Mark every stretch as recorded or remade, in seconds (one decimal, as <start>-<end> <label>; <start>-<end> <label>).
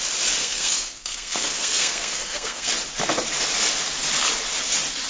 0.0-0.4 recorded; 0.4-2.7 remade; 2.7-5.1 recorded